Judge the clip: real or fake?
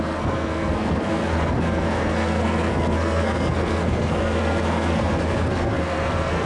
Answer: fake